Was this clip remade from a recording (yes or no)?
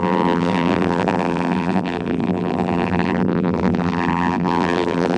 yes